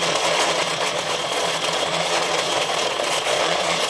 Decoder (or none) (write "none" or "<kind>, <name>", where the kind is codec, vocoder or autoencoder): vocoder, Vocos